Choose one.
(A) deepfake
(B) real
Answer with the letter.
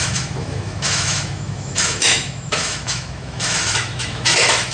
A